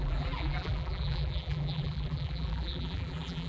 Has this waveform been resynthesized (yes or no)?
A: yes